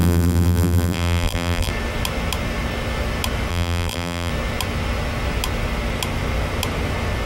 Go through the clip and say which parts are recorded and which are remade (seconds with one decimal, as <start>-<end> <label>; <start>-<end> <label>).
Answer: 0.0-1.7 remade; 1.7-3.5 recorded; 3.5-4.3 remade; 4.3-7.3 recorded